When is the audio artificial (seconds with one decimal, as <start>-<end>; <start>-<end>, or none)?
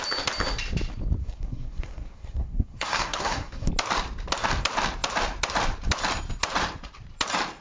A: 1.2-3.7